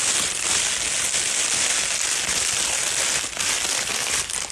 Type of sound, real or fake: real